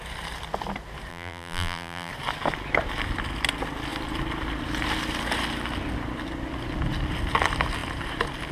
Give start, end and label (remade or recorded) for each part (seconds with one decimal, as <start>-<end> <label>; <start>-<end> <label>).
0.0-1.1 recorded; 1.1-2.1 remade; 2.1-8.5 recorded